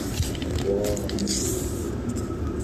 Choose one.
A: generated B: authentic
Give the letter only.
B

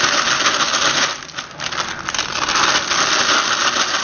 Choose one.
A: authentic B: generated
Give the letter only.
A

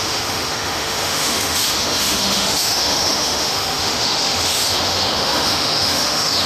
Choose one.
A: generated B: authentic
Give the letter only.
A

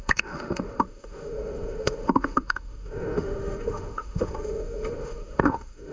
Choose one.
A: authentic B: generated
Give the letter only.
B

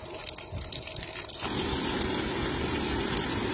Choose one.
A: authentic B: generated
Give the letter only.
A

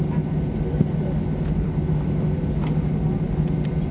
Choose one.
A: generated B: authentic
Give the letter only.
B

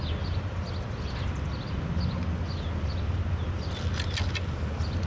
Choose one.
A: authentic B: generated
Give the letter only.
A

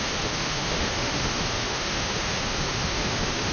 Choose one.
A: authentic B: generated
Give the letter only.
B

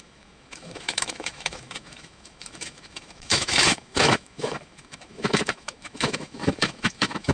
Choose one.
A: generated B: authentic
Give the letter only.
A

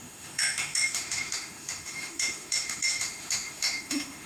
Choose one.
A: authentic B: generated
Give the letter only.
B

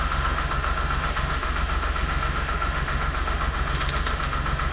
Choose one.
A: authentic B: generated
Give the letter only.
B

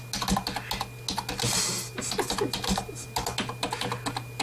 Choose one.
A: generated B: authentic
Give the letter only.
B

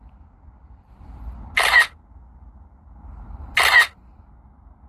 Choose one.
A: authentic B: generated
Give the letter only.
A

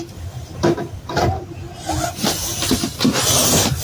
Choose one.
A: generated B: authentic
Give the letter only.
B